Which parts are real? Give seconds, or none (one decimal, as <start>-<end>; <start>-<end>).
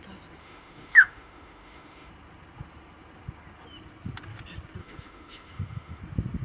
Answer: 0.0-0.4; 2.1-4.8; 6.0-6.4